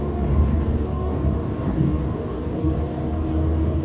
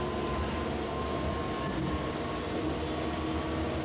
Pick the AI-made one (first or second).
first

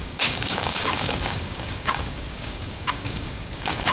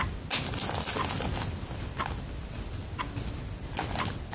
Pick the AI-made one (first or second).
first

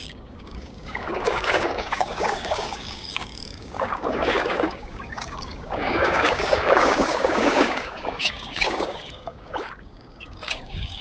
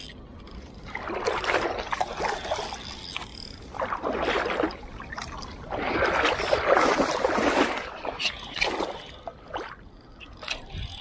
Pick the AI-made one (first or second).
first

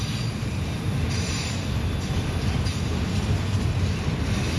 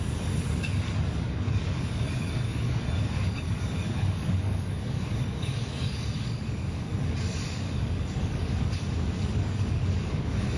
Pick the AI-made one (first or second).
second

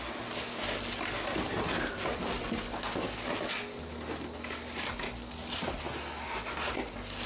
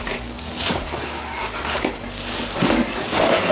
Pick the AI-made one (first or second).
second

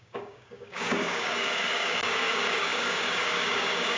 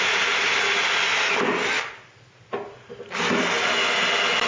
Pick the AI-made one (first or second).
first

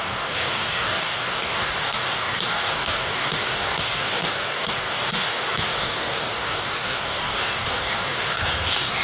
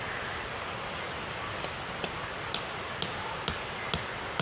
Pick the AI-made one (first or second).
first